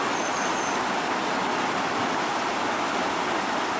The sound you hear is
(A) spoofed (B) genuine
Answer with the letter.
B